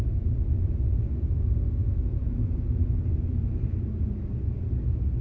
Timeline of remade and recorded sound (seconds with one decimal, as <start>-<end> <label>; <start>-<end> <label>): 0.0-5.2 recorded